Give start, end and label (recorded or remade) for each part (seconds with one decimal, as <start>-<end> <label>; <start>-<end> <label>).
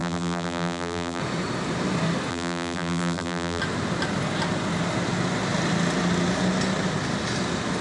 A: 0.0-1.2 remade; 1.2-2.3 recorded; 2.3-3.6 remade; 3.6-7.8 recorded